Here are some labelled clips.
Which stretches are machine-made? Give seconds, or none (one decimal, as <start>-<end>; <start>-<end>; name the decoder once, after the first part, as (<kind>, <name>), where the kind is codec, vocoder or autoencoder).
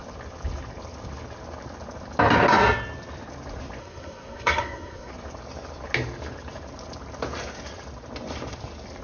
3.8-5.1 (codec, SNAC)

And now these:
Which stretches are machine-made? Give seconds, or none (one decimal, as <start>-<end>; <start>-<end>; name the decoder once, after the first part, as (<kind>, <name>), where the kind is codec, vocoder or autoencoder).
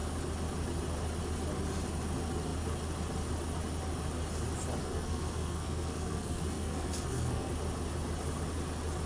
4.8-7.5 (codec, SNAC)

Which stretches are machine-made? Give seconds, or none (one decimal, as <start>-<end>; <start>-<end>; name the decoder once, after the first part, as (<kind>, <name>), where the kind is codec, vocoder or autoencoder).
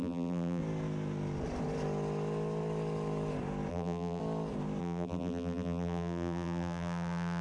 0.0-0.6 (vocoder, BigVGAN v2); 3.7-4.2; 4.8-7.4